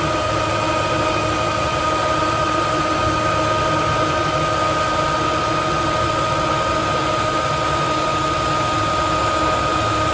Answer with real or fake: real